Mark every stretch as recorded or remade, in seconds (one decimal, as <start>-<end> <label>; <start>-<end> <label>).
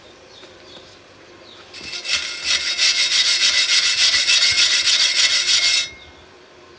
0.0-4.0 recorded; 4.0-5.6 remade; 5.6-6.8 recorded